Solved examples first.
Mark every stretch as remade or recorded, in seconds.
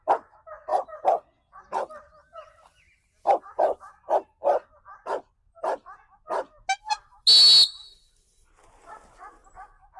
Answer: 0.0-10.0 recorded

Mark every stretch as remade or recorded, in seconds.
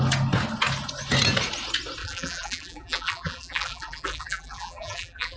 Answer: 0.0-2.0 recorded; 2.0-5.4 remade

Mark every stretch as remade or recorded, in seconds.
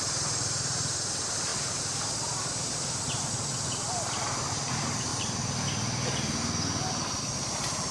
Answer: 0.0-5.1 remade; 5.1-7.2 recorded; 7.2-7.9 remade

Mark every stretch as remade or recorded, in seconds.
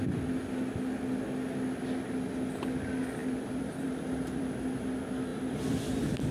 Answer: 0.0-3.2 recorded; 3.2-4.6 remade; 4.6-5.3 recorded; 5.3-6.3 remade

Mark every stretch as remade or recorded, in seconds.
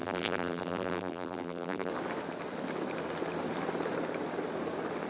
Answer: 0.0-1.9 remade; 1.9-5.1 recorded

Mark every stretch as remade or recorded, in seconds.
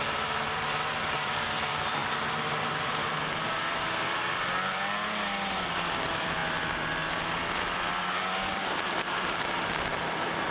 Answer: 0.0-4.8 remade; 4.8-6.0 recorded; 6.0-6.4 remade; 6.4-8.2 recorded; 8.2-9.9 remade; 9.9-10.5 recorded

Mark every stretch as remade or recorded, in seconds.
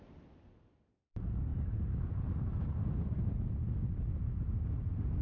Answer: 0.0-5.2 recorded